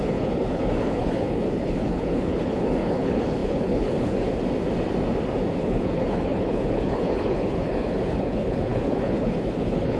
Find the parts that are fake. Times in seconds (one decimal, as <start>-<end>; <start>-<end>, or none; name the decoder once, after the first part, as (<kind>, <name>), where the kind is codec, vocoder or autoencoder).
0.0-4.3 (codec, HILCodec); 5.6-10.0